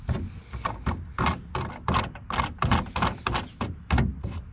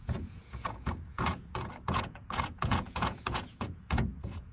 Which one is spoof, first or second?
second